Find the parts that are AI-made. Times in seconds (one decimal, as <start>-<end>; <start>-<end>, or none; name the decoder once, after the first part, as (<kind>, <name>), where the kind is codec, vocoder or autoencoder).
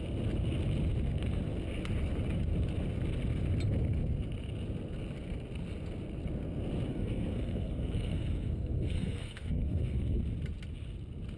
6.9-10.2 (codec, SNAC)